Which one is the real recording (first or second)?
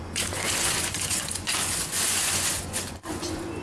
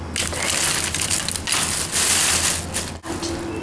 second